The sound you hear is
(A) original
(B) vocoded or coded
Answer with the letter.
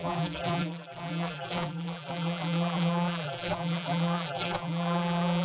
B